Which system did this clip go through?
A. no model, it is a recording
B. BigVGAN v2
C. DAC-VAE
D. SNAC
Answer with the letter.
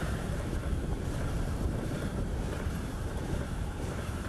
B